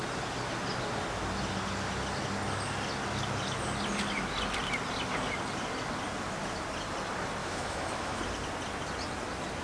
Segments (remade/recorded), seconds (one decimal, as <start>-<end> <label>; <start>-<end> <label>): 0.0-7.4 recorded; 7.4-8.2 remade; 8.2-9.6 recorded